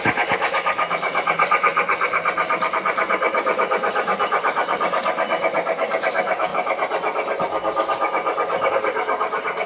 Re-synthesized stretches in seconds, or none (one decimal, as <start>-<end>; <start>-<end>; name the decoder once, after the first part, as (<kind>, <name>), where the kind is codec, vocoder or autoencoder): 0.0-1.7 (vocoder, BigVGAN v2); 2.7-6.5; 8.7-9.7